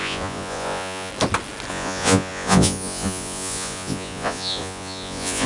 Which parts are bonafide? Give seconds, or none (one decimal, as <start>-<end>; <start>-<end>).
1.1-1.7